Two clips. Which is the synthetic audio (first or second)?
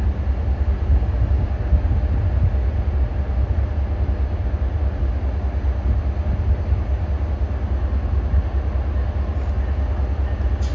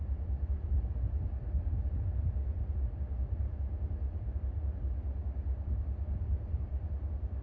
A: second